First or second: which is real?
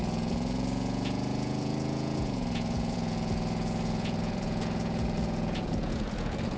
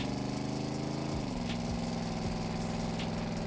second